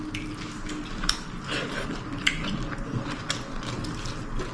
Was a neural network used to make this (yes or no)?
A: no